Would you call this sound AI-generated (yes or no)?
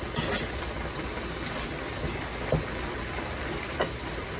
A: no